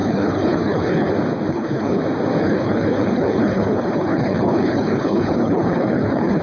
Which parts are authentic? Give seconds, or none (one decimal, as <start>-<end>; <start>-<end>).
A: 1.1-1.5; 2.0-2.4